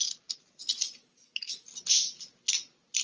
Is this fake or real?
real